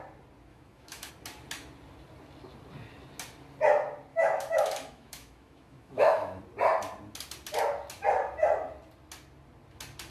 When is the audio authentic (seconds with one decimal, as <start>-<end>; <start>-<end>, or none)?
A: 0.0-0.5; 1.1-4.1; 6.4-10.1